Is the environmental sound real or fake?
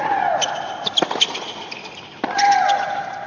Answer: real